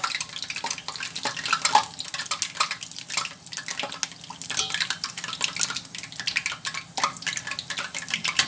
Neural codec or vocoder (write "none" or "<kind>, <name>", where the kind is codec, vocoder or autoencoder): none